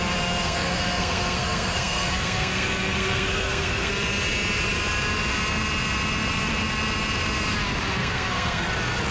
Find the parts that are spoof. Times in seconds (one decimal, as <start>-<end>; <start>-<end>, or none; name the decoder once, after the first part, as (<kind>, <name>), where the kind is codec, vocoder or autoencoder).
0.4-3.9 (codec, SNAC); 8.0-8.7